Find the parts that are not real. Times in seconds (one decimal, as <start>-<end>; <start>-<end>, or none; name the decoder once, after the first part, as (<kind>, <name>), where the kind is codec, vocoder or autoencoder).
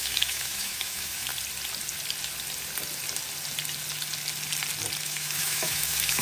0.0-1.3 (autoencoder, DAC-VAE); 5.0-6.2